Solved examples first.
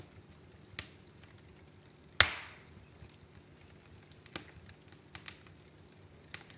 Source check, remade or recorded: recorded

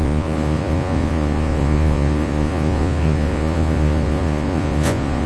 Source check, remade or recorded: remade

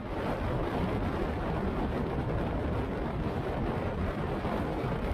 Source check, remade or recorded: remade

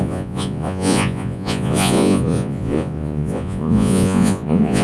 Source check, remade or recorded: remade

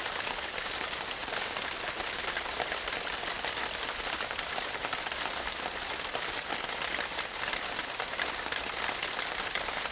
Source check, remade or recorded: remade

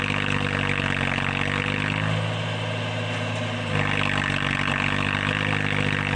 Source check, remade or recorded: recorded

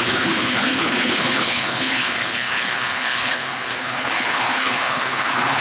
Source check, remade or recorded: remade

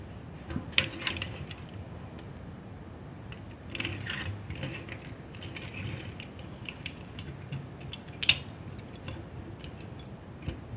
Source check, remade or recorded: recorded